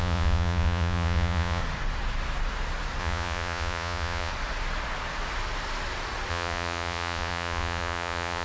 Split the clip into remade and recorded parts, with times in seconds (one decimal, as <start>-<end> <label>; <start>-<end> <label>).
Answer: 0.0-1.6 remade; 1.6-3.0 recorded; 3.0-4.3 remade; 4.3-6.3 recorded; 6.3-8.4 remade